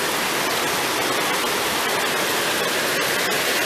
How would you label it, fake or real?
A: real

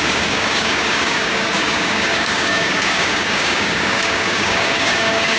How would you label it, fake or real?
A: fake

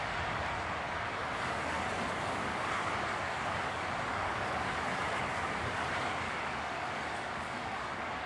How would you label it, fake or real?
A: fake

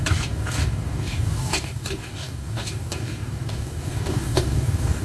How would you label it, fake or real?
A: fake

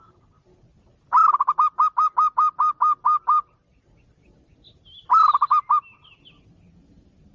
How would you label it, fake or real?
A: real